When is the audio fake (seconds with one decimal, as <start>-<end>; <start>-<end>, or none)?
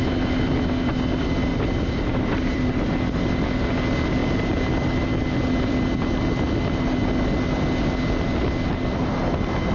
1.5-2.6